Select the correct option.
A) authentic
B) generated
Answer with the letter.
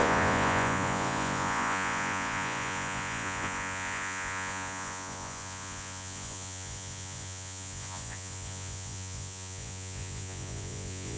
B